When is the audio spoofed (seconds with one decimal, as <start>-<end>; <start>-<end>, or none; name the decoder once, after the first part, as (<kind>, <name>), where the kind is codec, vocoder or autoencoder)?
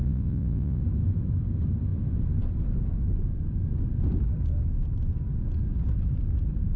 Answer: 0.0-0.8 (vocoder, Vocos)